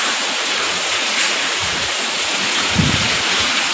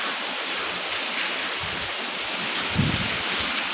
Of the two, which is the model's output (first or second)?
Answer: first